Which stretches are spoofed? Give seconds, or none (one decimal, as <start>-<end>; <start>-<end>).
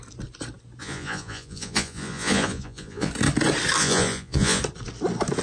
0.8-3.1; 3.8-4.6